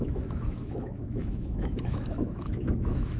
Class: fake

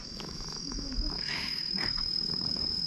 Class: fake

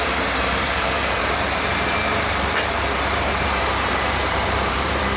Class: fake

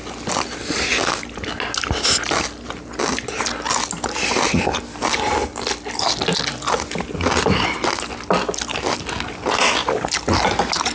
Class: real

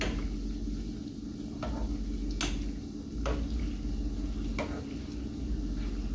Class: real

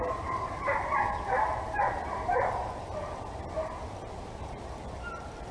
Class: real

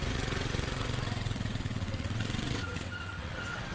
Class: fake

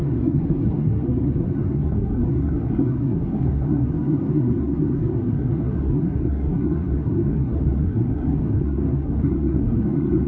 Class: fake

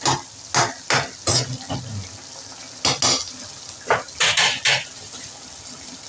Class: real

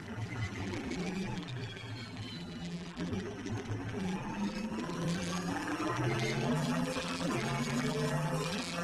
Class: fake